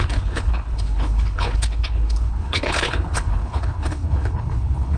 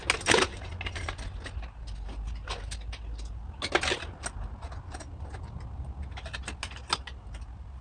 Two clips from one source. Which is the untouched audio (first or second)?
second